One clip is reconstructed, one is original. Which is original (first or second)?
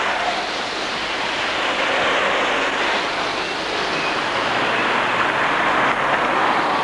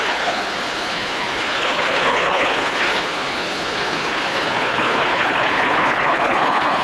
first